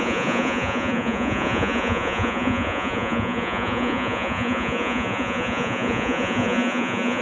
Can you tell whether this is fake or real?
fake